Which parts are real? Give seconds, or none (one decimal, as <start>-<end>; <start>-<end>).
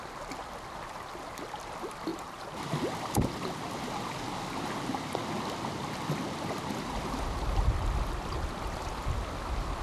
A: 0.0-2.1; 2.7-9.8